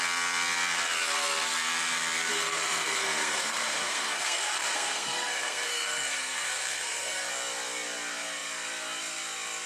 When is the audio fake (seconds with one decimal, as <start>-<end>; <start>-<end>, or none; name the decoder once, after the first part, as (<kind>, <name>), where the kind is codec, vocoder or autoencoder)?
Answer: 2.3-7.3 (codec, SNAC)